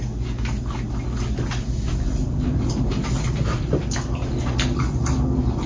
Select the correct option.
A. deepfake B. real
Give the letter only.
B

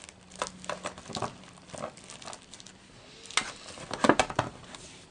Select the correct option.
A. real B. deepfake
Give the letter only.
A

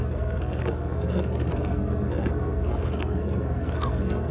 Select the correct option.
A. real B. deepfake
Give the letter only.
B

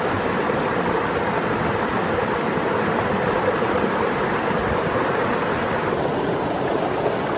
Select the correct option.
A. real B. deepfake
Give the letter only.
A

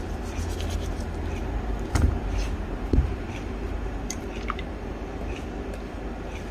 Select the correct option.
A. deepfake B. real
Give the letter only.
B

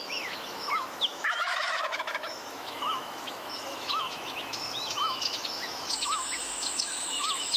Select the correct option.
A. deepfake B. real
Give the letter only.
A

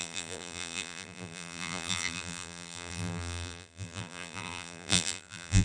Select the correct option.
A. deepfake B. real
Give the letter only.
A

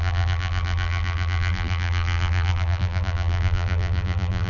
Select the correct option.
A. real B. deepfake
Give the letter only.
B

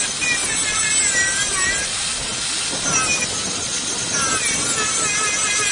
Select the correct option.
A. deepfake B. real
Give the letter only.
B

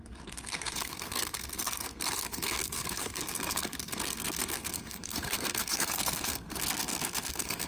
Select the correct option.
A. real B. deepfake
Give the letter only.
B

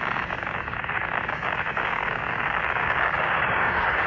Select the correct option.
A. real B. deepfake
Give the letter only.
B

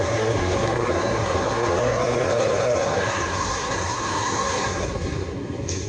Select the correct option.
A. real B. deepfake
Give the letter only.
B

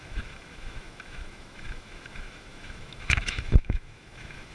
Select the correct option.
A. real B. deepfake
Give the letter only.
B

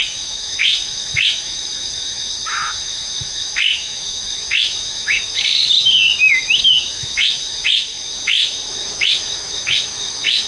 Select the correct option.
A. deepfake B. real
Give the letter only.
A